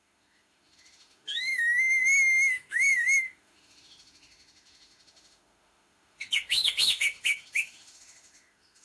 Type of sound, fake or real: fake